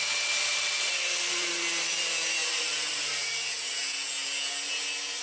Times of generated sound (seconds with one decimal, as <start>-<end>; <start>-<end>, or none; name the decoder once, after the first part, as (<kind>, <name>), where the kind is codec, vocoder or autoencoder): 0.5-1.5 (vocoder, BigVGAN v2); 2.4-4.1